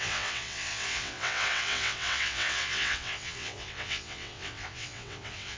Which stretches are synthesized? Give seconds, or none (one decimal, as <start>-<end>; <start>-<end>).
0.0-5.6